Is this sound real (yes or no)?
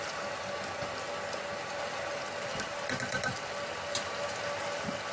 yes